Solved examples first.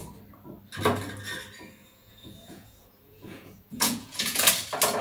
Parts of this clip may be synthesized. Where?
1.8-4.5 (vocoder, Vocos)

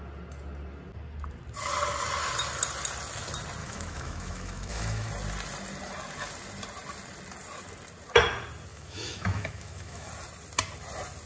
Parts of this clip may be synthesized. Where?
3.6-5.1 (autoencoder, DAC-VAE); 8.7-10.1

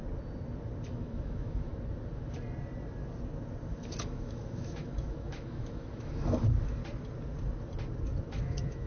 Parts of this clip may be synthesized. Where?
0.9-1.7 (autoencoder, DAC-VAE); 3.7-6.8; 8.3-8.9